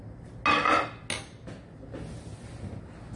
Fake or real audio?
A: real